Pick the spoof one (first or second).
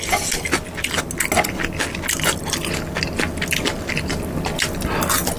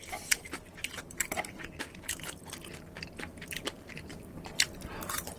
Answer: second